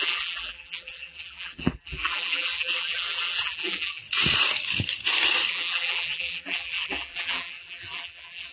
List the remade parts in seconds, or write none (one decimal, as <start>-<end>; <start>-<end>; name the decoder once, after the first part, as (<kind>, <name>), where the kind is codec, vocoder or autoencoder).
0.0-4.0 (vocoder, BigVGAN v2); 5.5-8.5